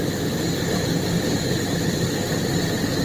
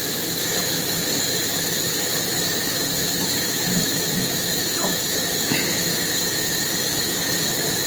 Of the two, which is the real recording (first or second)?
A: first